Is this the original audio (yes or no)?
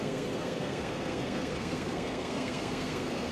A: no